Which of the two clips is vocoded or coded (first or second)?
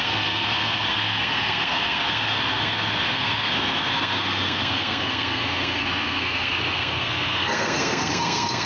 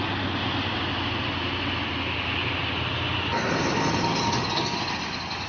first